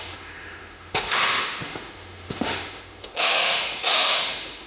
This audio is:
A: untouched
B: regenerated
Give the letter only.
B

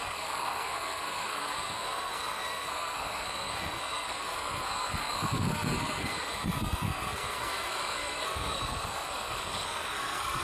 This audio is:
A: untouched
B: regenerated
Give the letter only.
B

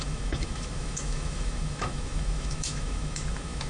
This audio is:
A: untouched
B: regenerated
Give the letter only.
B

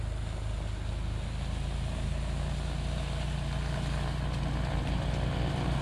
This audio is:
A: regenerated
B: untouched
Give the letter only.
B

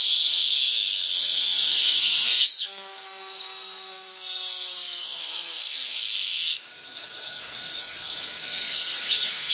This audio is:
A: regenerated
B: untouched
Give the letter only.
A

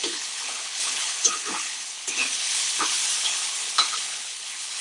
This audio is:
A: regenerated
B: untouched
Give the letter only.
A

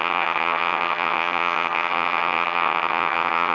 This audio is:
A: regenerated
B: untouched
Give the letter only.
A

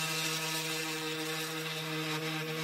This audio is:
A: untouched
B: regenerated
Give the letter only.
A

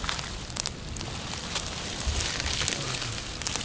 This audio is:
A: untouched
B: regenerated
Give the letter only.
A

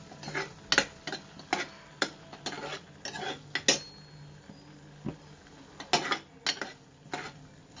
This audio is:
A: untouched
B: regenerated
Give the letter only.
A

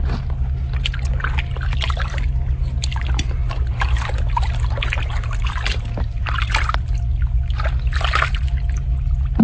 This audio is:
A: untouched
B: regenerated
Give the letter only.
A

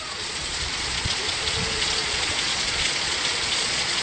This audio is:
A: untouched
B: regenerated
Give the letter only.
B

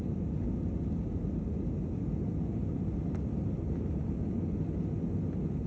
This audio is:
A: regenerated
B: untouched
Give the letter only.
B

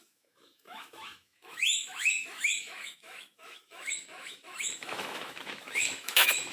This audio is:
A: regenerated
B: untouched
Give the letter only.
A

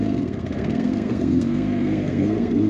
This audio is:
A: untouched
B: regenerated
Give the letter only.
B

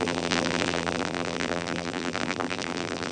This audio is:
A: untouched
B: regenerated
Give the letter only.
B